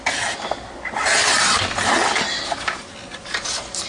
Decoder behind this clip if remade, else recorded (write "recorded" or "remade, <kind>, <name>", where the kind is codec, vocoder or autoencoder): recorded